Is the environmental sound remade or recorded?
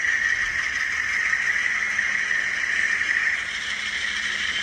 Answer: recorded